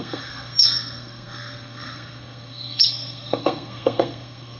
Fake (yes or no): yes